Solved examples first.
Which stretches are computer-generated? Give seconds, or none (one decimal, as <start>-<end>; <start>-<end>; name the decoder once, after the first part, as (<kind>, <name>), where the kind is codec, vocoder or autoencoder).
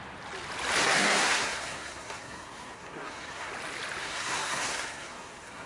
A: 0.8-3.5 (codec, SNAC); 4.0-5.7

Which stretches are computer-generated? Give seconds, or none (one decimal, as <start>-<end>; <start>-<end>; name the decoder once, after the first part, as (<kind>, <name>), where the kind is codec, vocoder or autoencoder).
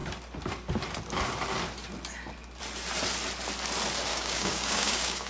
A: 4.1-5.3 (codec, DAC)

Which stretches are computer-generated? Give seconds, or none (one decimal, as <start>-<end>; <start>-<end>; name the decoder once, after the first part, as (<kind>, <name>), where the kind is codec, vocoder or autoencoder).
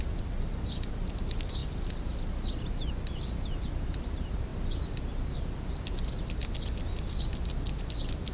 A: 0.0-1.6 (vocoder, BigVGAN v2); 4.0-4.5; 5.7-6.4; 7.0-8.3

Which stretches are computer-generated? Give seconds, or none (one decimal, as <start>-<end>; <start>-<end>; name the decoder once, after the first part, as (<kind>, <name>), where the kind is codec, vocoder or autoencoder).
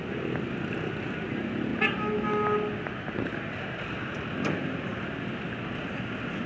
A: none